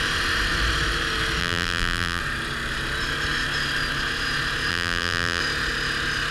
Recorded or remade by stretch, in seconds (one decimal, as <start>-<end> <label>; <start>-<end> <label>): 0.0-1.4 recorded; 1.4-2.2 remade; 2.2-4.7 recorded; 4.7-5.4 remade; 5.4-6.3 recorded